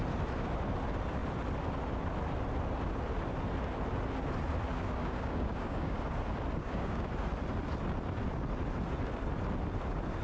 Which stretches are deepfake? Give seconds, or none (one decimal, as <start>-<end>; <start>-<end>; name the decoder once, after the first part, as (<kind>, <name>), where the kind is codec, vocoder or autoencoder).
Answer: 5.0-6.0 (codec, DAC); 6.6-7.1